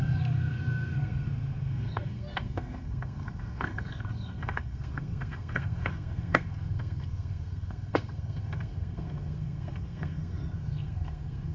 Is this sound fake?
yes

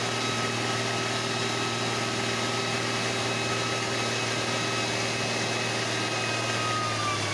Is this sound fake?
no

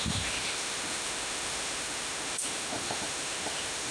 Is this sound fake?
yes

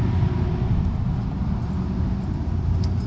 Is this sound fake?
no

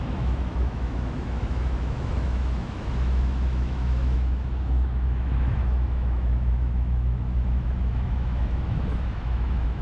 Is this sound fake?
yes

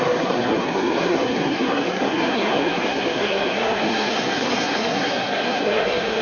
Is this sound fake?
yes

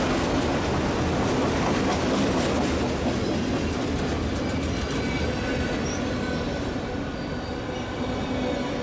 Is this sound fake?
no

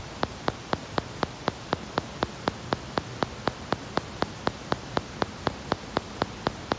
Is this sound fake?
no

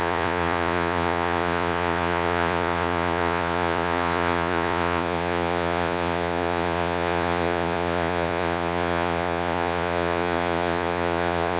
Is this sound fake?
yes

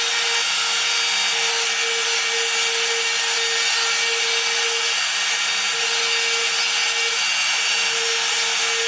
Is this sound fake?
no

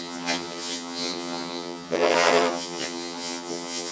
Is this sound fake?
yes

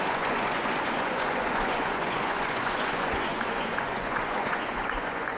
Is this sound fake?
yes